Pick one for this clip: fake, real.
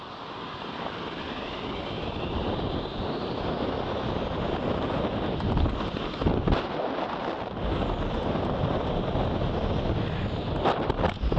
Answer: real